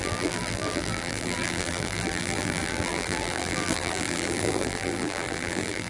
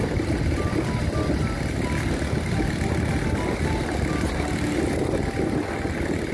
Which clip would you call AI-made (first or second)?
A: first